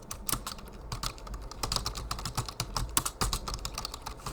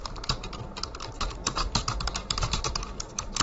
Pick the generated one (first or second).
second